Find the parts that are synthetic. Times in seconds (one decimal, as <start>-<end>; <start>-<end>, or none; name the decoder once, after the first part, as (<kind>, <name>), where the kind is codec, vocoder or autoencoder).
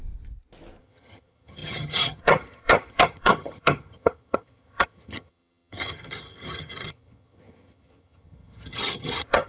0.8-9.5 (vocoder, HiFi-GAN)